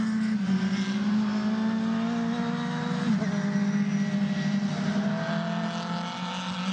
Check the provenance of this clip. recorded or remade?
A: recorded